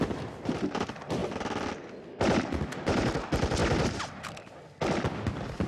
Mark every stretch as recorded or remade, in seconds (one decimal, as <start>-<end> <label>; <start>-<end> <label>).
0.0-5.7 recorded